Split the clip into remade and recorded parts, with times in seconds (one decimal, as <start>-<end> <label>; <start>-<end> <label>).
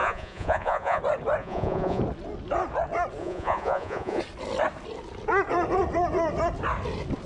0.0-1.0 remade; 1.0-1.4 recorded; 1.4-2.0 remade; 2.0-3.2 recorded; 3.2-4.2 remade; 4.2-7.3 recorded